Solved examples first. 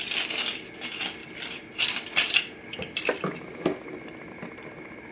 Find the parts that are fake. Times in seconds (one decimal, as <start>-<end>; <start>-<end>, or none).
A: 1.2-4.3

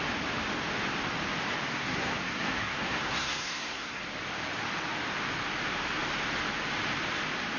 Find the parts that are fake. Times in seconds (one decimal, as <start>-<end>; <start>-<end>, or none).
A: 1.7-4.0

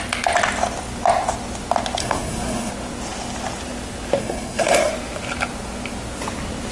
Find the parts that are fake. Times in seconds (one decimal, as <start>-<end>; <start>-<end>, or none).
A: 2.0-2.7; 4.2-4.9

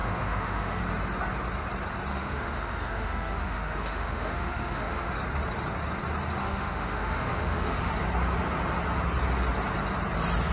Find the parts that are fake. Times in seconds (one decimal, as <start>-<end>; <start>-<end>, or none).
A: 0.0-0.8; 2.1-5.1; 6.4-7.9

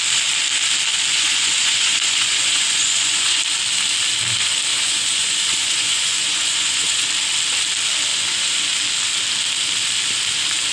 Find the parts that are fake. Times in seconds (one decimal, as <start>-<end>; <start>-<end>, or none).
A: 1.1-3.4; 4.7-7.1; 8.1-8.7

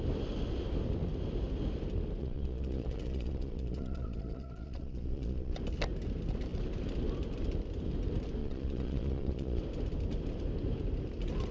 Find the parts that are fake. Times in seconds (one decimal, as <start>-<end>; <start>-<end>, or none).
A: 2.2-5.6; 8.4-9.6

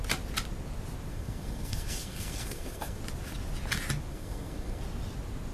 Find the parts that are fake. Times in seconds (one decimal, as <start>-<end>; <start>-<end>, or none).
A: 1.1-3.0; 4.1-4.8

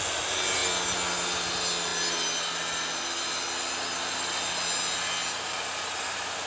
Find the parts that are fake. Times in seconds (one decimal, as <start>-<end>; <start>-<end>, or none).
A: none